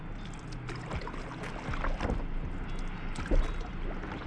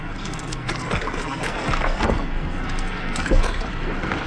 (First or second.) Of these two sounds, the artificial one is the second